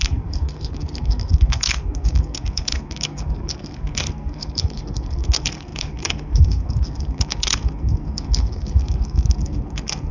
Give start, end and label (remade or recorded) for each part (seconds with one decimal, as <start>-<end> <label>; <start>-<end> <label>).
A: 0.0-10.1 remade